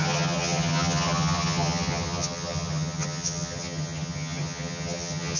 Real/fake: fake